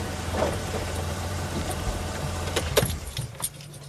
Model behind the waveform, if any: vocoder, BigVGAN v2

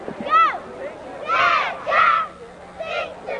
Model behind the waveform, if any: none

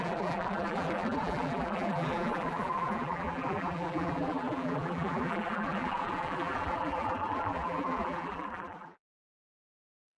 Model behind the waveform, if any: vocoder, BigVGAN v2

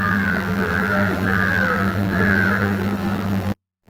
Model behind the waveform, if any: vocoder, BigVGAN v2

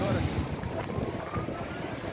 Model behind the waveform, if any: vocoder, BigVGAN v2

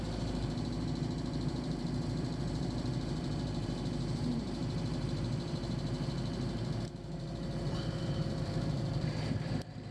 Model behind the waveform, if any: vocoder, BigVGAN v2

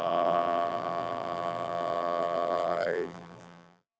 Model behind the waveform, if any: vocoder, BigVGAN v2